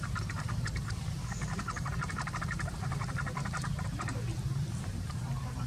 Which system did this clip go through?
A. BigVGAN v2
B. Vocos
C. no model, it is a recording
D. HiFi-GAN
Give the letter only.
A